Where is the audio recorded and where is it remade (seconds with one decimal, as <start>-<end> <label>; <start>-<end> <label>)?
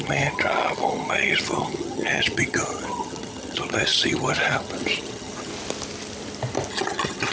0.0-5.5 remade; 5.5-6.7 recorded; 6.7-7.3 remade